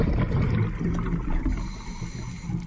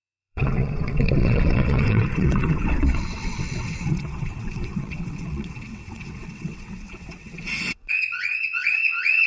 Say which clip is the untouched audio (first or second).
first